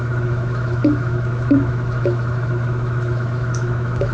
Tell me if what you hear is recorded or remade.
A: remade